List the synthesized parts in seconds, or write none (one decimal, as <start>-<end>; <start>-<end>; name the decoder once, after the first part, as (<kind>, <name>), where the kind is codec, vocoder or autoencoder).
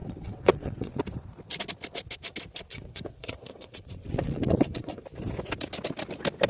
0.0-1.0 (vocoder, WaveNeXt); 2.7-5.0